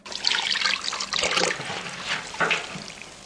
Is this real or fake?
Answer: real